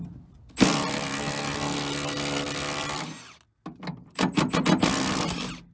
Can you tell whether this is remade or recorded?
recorded